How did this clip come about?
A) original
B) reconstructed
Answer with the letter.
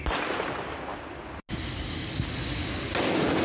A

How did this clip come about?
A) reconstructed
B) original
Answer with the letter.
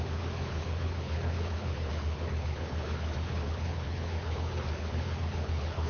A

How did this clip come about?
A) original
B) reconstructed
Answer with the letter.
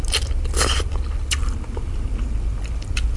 A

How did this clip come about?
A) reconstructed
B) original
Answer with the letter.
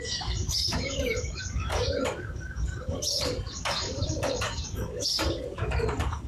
A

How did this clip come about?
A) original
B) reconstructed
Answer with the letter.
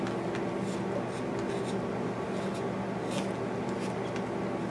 A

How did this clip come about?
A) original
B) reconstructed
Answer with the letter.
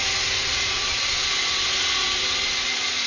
B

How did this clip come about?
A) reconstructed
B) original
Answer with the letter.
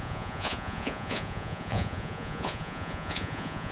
A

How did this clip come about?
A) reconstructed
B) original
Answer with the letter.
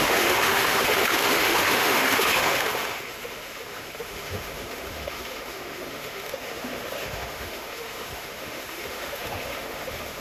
A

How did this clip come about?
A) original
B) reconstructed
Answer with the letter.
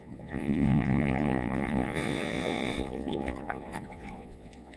B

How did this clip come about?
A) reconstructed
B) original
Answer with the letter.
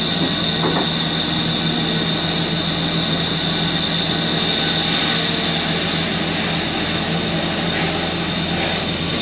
B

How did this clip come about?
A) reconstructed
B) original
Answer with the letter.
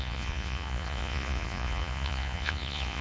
A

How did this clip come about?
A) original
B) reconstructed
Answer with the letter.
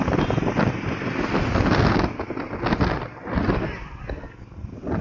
A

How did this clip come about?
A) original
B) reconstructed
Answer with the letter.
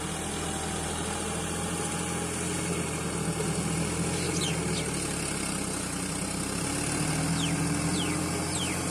A